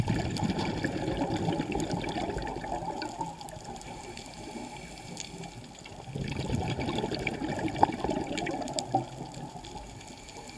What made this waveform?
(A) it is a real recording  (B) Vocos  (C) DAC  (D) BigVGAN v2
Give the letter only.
A